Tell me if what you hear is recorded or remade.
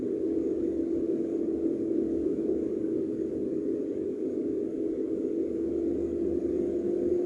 remade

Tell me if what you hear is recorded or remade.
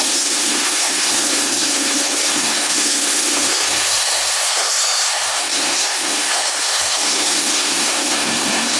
remade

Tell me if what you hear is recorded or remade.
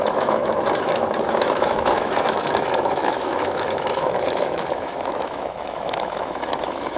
remade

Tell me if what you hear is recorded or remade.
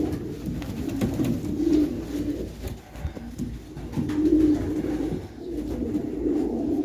recorded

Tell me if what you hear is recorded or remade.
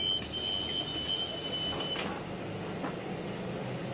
recorded